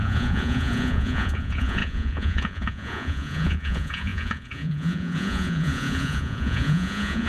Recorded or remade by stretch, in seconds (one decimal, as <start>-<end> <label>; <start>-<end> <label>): 0.0-7.3 remade

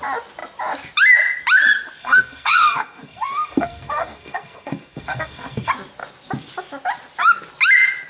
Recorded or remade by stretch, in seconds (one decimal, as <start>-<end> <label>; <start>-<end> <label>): 0.0-2.0 recorded; 2.0-5.7 remade; 5.7-8.1 recorded